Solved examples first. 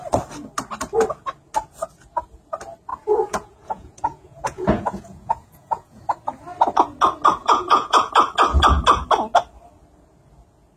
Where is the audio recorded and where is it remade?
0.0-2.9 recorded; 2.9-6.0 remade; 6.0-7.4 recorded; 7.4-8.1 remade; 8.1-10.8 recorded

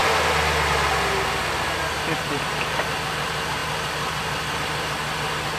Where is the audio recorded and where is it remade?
0.0-5.6 recorded

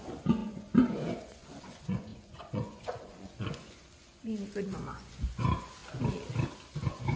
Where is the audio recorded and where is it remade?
0.0-5.8 remade; 5.8-6.7 recorded; 6.7-7.2 remade

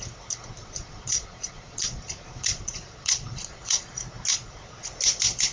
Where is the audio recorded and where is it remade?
0.0-0.6 recorded; 0.6-3.9 remade; 3.9-4.3 recorded; 4.3-4.8 remade; 4.8-5.5 recorded

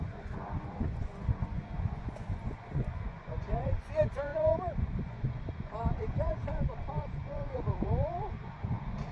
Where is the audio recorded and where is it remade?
0.0-9.1 remade

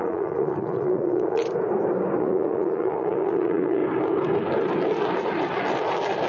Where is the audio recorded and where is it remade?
0.0-1.4 remade; 1.4-2.2 recorded; 2.2-3.8 remade; 3.8-6.3 recorded

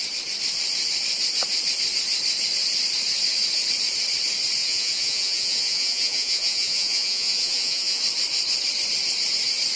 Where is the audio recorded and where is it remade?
0.0-4.6 recorded; 4.6-8.0 remade; 8.0-9.8 recorded